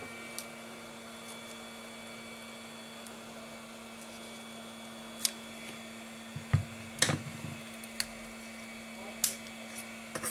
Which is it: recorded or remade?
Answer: recorded